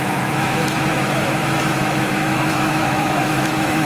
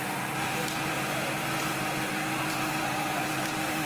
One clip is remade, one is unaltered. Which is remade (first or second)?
first